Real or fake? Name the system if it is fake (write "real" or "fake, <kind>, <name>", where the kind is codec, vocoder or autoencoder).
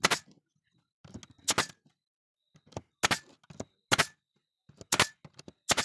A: real